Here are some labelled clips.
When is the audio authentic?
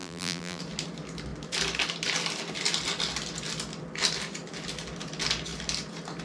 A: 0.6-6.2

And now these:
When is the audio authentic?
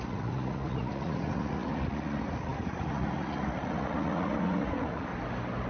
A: 5.1-5.7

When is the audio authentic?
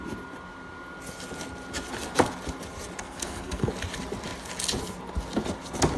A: 0.0-3.0; 3.7-6.0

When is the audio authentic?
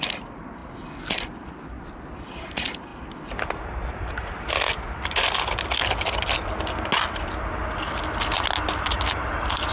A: 0.0-9.7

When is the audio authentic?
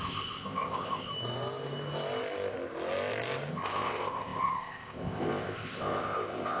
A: 1.1-3.5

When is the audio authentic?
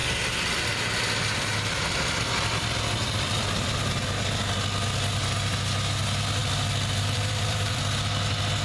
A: 3.9-6.4; 7.8-8.6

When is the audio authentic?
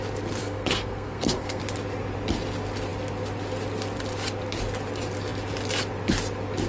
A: 0.0-0.4; 1.6-6.7